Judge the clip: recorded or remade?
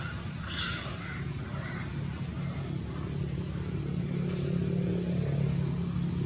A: recorded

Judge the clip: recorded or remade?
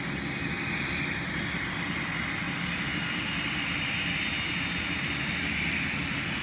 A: recorded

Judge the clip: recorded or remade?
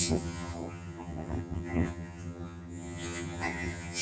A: remade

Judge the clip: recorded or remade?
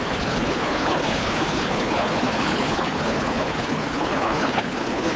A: remade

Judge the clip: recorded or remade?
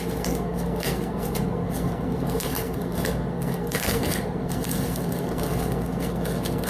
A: remade